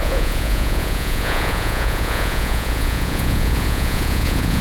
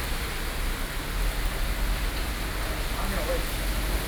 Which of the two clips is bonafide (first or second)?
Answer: second